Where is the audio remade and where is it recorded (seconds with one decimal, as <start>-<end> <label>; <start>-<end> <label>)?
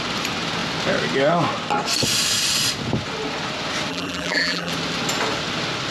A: 0.0-3.9 recorded; 3.9-4.7 remade; 4.7-5.9 recorded